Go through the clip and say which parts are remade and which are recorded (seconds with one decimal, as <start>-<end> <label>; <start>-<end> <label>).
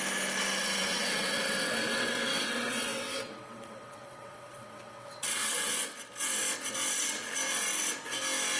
0.0-0.6 recorded; 0.6-5.8 remade; 5.8-8.6 recorded